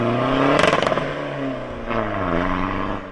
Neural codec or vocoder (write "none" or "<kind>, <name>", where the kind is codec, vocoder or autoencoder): none